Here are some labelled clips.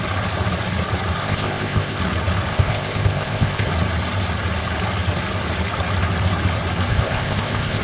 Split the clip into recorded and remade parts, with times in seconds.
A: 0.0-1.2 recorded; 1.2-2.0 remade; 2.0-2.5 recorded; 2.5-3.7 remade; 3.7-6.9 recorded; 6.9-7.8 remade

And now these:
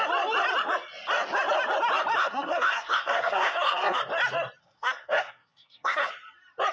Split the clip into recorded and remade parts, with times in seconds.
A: 0.0-2.2 recorded; 2.2-4.0 remade; 4.0-4.6 recorded; 4.6-6.1 remade; 6.1-6.7 recorded

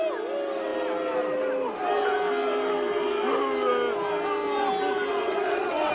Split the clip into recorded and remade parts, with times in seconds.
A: 0.0-5.1 recorded; 5.1-5.9 remade

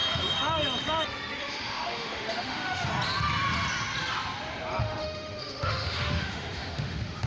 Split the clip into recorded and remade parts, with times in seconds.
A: 0.0-1.4 recorded; 1.4-2.9 remade; 2.9-4.8 recorded; 4.8-7.3 remade